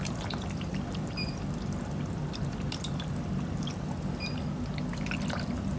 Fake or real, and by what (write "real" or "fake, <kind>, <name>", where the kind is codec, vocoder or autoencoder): fake, vocoder, BigVGAN v2